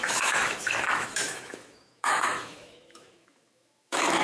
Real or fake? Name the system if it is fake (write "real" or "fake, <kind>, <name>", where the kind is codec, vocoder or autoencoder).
fake, autoencoder, DAC-VAE